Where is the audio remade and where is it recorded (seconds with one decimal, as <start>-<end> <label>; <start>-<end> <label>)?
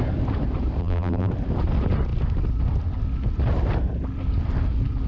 0.0-0.8 recorded; 0.8-1.3 remade; 1.3-5.1 recorded